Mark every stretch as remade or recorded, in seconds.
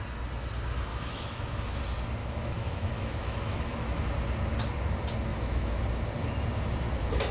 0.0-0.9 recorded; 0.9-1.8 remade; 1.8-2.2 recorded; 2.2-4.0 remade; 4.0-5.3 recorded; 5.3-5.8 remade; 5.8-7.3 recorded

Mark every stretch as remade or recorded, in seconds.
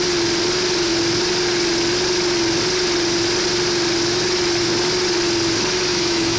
0.0-5.9 recorded; 5.9-6.4 remade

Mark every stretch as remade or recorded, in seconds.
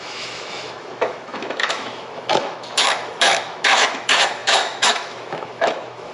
0.0-6.1 remade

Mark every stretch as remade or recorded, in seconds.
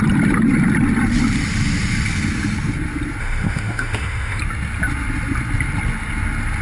0.0-3.2 recorded; 3.2-4.4 remade; 4.4-6.6 recorded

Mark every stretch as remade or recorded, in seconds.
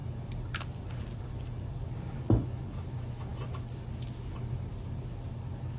0.0-5.8 recorded